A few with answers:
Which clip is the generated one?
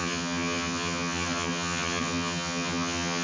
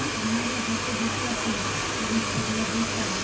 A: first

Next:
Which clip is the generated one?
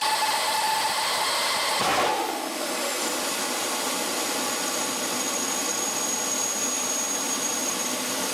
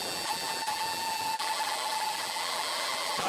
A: second